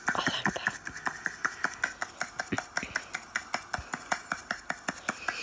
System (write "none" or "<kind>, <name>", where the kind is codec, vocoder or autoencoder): none